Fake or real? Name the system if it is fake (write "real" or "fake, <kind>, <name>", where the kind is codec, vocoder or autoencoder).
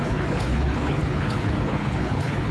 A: fake, codec, HILCodec